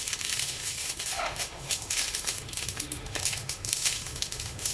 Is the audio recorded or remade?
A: remade